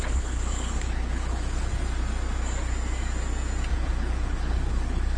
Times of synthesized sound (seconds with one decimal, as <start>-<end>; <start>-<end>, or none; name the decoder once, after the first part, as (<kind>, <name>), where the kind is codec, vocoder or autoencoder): 0.0-1.7 (codec, HILCodec); 3.7-5.2